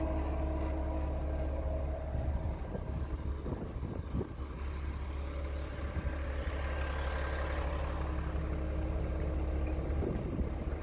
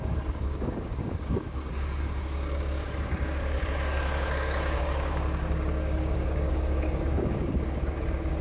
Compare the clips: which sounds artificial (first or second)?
second